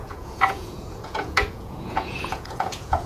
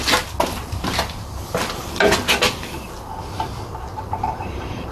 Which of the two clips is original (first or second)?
second